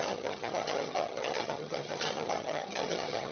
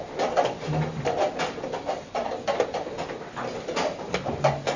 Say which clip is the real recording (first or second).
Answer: second